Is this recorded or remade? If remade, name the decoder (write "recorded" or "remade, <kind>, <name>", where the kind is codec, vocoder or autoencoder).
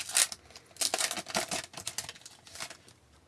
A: recorded